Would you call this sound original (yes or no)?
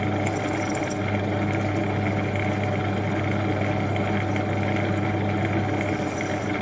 yes